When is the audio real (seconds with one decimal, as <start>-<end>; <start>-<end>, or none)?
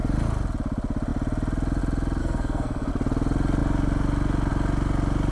0.0-2.2; 2.9-5.3